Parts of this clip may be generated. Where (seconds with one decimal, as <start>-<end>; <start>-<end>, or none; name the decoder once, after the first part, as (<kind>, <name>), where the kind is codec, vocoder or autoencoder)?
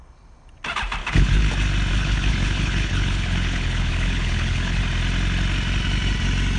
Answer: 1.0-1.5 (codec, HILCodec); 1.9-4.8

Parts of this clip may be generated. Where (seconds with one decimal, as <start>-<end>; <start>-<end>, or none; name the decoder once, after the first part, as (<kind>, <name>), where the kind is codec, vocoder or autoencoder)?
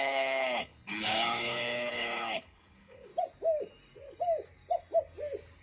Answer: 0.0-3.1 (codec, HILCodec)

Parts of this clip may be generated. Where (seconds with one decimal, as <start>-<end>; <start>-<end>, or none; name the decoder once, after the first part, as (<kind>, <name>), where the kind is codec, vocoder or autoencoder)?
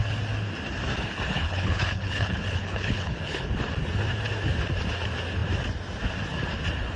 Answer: 1.3-3.5 (codec, HILCodec)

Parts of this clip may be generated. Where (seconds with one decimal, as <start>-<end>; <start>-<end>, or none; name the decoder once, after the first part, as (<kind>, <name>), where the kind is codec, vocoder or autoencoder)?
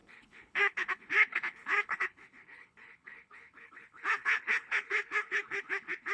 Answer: 0.0-6.1 (codec, HILCodec)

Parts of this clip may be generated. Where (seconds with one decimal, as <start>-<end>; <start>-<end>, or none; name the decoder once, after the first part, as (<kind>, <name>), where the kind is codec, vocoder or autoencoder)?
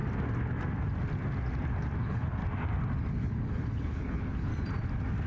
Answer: 2.0-2.4 (codec, HILCodec); 3.1-4.5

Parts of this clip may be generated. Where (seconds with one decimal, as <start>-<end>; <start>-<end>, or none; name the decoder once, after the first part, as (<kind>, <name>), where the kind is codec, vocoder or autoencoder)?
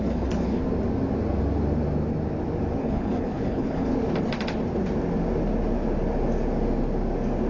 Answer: 0.0-0.6 (codec, HILCodec); 2.8-3.9